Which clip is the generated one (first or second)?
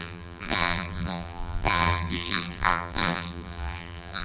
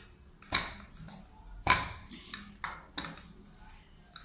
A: first